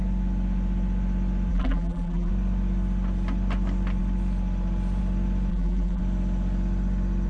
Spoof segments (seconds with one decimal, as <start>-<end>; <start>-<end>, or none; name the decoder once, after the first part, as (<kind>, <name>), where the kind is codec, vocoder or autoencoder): 1.5-2.3 (vocoder, BigVGAN v2); 5.5-6.0